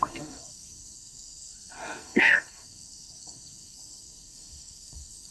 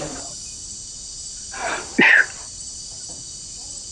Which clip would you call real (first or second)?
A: second